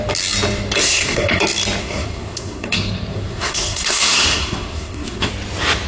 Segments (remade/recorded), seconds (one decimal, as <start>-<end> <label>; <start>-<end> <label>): 0.0-0.8 recorded; 0.8-1.4 remade; 1.4-1.8 recorded; 1.8-5.3 remade; 5.3-5.9 recorded